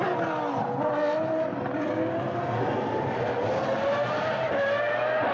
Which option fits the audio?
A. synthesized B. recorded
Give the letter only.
B